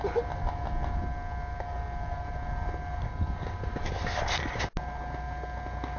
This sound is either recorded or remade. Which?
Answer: recorded